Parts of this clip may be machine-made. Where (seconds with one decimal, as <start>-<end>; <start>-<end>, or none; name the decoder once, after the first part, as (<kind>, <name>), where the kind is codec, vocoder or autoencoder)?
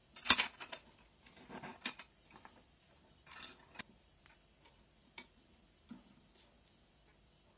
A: 1.7-3.6 (vocoder, BigVGAN v2)